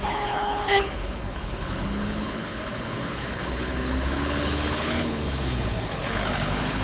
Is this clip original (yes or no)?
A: no